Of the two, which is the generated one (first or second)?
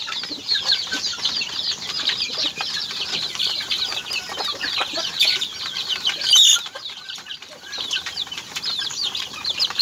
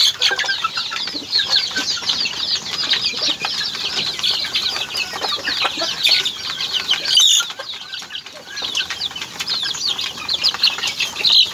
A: first